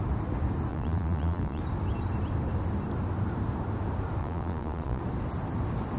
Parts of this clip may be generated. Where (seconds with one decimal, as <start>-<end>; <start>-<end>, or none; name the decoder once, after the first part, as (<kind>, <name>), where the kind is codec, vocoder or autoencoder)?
0.7-1.6 (vocoder, Vocos); 4.2-5.0